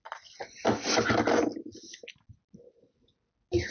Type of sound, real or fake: real